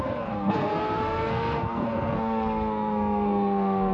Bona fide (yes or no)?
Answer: no